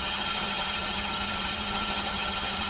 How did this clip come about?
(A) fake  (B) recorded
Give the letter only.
A